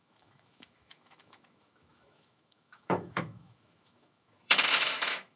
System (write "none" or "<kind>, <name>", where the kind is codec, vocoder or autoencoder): autoencoder, DAC-VAE